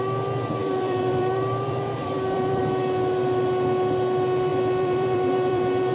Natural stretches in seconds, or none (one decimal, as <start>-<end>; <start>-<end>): 0.0-0.6; 2.6-4.5